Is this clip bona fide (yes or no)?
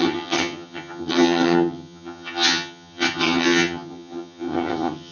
no